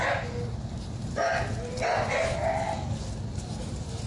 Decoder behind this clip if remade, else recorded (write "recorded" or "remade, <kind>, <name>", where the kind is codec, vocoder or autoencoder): recorded